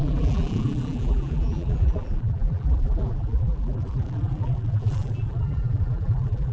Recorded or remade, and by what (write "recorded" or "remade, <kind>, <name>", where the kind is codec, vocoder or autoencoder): remade, vocoder, BigVGAN v2